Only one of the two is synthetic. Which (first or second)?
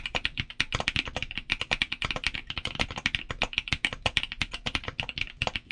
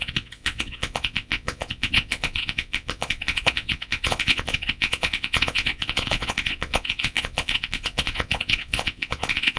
second